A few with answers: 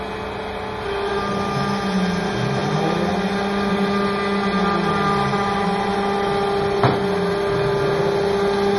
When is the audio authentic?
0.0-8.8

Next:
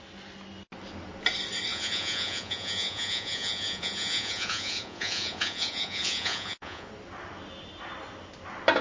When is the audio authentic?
0.0-1.7; 6.9-8.8

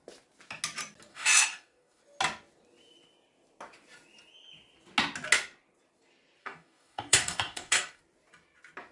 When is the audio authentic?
0.0-1.1; 2.0-6.4; 8.0-8.9

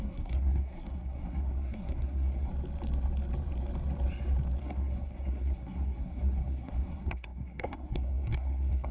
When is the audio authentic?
2.5-4.6

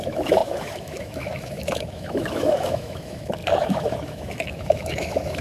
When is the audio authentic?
none

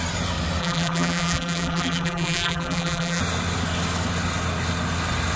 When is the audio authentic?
0.0-0.6; 3.2-5.4

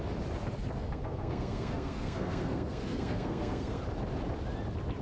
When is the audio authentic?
0.0-0.8; 3.8-5.0

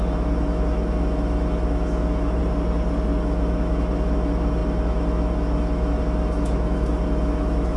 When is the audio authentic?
2.4-3.2